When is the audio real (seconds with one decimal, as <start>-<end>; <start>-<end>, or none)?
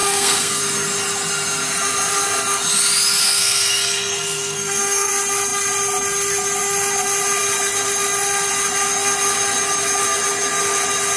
0.6-3.2; 5.1-11.2